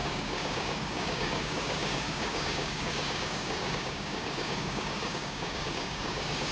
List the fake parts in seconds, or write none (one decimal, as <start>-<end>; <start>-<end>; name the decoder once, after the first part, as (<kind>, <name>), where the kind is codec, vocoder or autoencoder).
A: 0.0-6.5 (codec, DAC)

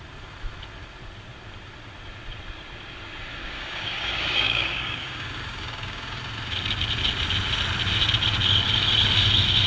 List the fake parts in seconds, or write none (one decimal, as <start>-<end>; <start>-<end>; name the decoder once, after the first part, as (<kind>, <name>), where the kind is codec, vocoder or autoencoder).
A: 3.4-6.2 (codec, DAC)

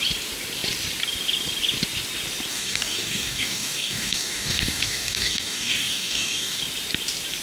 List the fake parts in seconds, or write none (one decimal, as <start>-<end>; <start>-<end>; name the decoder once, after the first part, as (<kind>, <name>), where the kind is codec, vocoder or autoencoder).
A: 2.5-6.6 (codec, DAC)

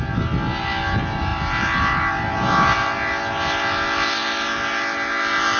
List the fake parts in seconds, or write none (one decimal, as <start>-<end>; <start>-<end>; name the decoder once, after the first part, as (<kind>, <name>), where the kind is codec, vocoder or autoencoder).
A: none